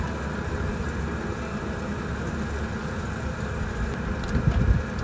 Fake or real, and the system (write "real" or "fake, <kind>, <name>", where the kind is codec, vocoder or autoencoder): real